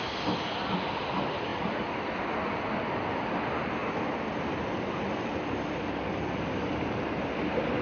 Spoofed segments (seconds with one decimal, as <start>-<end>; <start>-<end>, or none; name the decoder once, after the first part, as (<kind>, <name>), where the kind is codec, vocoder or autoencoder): none